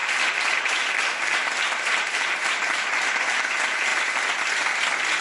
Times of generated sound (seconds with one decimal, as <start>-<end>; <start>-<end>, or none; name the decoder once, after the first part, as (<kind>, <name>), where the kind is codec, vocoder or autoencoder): none